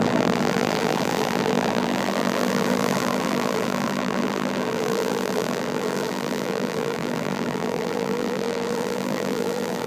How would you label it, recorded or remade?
remade